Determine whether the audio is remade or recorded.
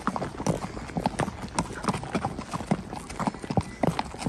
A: recorded